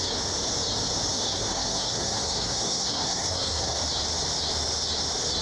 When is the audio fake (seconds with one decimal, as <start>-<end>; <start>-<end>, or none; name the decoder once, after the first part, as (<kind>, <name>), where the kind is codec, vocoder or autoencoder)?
1.1-3.8 (codec, SNAC)